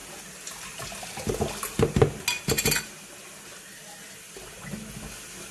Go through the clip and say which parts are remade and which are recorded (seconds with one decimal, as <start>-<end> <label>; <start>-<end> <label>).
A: 0.0-5.5 recorded

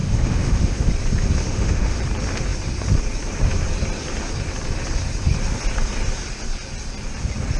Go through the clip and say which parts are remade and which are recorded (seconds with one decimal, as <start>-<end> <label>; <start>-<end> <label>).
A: 0.0-0.9 remade; 0.9-1.4 recorded; 1.4-2.0 remade; 2.0-7.6 recorded